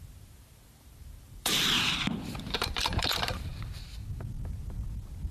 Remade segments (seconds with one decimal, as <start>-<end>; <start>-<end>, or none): 0.0-3.5